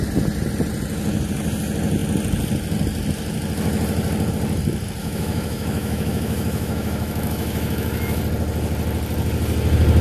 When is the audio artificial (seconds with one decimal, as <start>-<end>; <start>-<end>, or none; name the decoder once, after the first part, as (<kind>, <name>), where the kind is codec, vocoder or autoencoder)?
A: 5.0-8.2 (autoencoder, DAC-VAE)